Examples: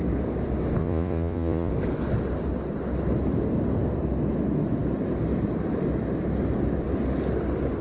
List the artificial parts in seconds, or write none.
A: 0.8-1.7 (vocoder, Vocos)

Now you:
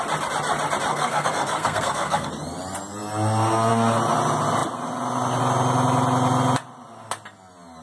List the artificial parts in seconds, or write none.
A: 0.9-2.3 (codec, SNAC)

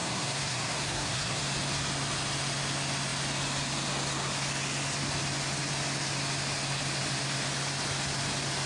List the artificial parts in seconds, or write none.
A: 0.0-1.4 (codec, SNAC)

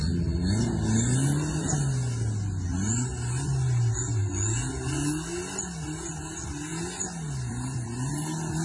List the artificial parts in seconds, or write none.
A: none

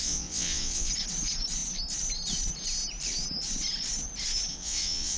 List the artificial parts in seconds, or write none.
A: 0.0-0.9 (vocoder, WaveNeXt); 4.5-5.2

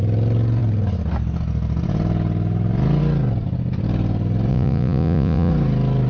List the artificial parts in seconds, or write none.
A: 4.5-5.5 (vocoder, Vocos)